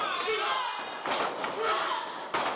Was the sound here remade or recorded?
recorded